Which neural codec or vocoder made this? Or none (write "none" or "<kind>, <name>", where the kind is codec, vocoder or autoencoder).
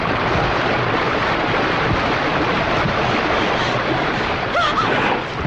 vocoder, BigVGAN v2